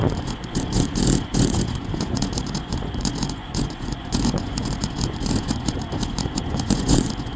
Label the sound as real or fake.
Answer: fake